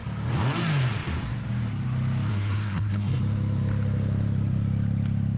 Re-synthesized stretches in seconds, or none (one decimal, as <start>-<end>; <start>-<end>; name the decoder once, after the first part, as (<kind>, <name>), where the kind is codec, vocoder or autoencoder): 2.3-3.2 (codec, SNAC)